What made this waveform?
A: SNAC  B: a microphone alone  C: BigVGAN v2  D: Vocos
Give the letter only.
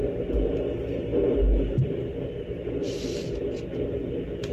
B